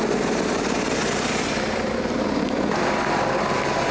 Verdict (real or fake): fake